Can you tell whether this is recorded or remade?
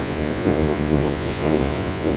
remade